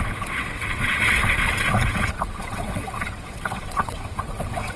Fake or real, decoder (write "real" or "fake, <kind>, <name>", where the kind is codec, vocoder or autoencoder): fake, vocoder, WaveNeXt